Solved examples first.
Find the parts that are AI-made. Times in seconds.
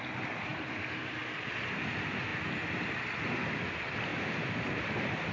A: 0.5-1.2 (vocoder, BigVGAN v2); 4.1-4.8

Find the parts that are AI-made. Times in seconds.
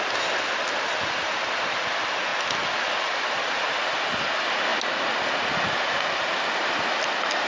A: none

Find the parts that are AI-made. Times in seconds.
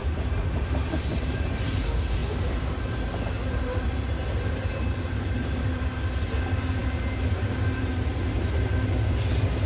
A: 0.0-1.8 (vocoder, BigVGAN v2); 2.2-5.8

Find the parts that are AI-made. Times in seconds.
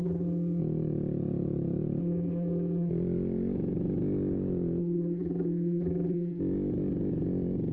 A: 0.0-0.6 (vocoder, BigVGAN v2); 2.0-2.9; 4.8-6.4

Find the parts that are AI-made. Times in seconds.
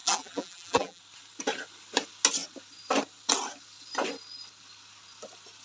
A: 0.0-1.0 (vocoder, BigVGAN v2)